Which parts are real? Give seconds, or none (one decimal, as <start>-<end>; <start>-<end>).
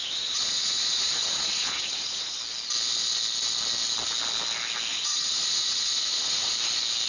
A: 2.4-4.9; 6.5-7.1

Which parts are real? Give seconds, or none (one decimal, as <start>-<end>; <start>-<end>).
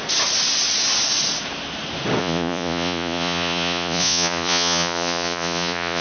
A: 0.0-2.2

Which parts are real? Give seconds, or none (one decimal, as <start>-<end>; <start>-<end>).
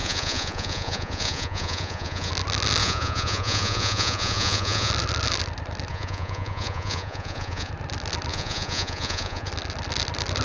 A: 2.3-2.8; 4.9-5.9; 7.7-8.3; 9.5-10.4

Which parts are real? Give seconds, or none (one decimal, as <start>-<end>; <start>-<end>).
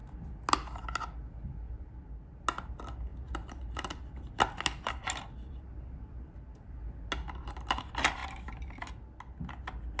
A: 0.0-10.0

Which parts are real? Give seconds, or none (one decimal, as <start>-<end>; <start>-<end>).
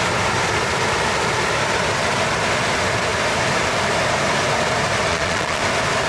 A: 0.0-5.1; 5.6-6.1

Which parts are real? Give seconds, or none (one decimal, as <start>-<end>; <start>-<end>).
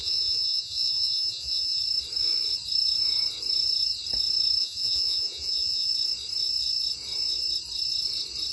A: 1.8-4.6; 5.9-8.5